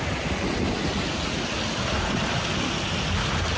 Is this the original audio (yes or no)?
yes